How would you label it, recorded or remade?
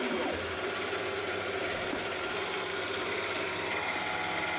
remade